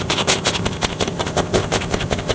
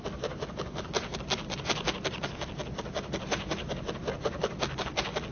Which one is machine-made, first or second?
first